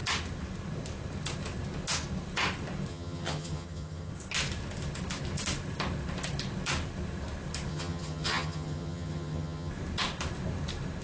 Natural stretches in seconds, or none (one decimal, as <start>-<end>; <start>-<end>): 0.0-2.9; 4.1-7.7; 9.7-11.0